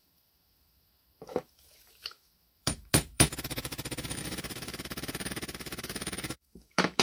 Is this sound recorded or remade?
remade